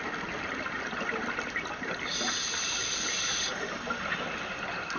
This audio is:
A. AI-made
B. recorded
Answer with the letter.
B